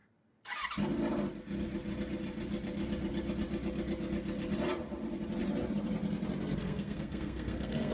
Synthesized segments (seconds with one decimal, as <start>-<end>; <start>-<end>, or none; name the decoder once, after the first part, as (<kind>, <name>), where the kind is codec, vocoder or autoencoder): 6.6-7.9 (codec, SNAC)